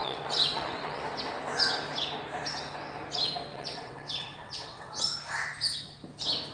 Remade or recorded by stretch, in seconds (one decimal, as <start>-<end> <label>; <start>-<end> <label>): 0.0-1.0 remade; 1.0-3.5 recorded; 3.5-5.0 remade; 5.0-6.5 recorded